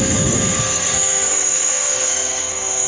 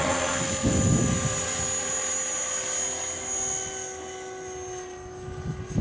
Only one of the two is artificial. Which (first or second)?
first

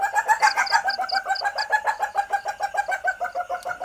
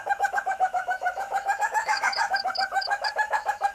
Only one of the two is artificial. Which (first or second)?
second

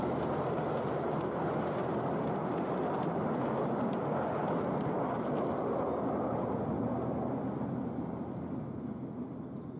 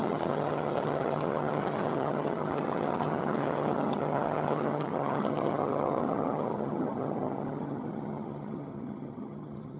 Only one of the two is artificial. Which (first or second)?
second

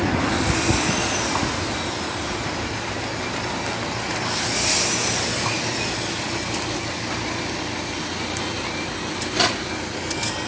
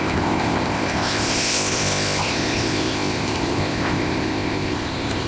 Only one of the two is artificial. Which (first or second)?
second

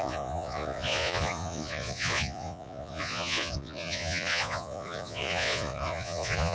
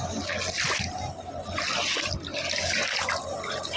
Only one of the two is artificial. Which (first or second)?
first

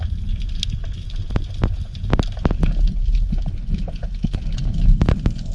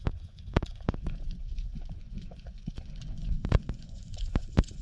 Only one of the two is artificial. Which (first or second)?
second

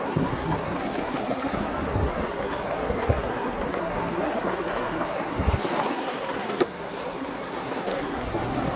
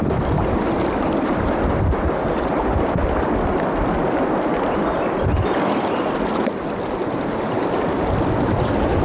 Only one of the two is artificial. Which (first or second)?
first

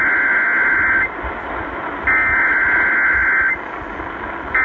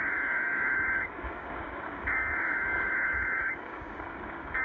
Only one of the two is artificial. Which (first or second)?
second